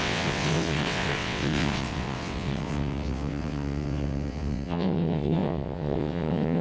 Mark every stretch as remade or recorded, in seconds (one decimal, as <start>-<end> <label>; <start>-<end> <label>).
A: 0.0-6.6 remade